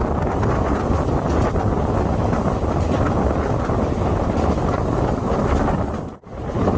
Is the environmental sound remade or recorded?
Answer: recorded